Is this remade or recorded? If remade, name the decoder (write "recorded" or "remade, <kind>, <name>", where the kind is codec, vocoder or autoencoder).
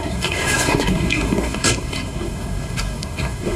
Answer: remade, codec, SNAC